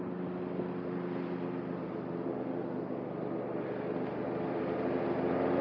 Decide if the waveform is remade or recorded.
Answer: recorded